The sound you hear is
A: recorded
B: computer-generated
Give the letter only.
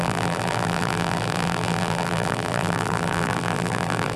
B